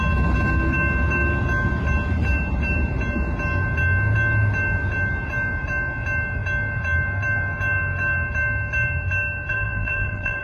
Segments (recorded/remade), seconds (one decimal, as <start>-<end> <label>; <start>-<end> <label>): 0.0-9.5 recorded; 9.5-10.4 remade